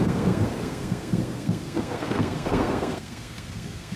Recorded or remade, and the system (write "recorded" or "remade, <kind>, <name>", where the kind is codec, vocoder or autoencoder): remade, codec, SNAC